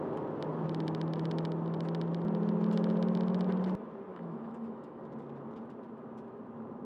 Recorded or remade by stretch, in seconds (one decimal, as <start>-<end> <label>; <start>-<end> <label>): 0.0-4.1 recorded; 4.1-5.0 remade; 5.0-6.8 recorded